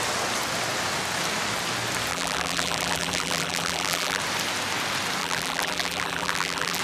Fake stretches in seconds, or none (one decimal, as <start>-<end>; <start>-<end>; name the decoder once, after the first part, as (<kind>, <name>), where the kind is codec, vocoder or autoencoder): 2.1-4.2 (vocoder, BigVGAN v2); 5.2-6.8